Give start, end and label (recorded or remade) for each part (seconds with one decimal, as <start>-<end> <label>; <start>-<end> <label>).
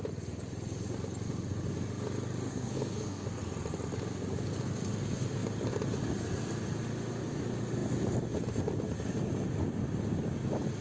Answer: 0.0-2.5 recorded; 2.5-3.4 remade; 3.4-10.8 recorded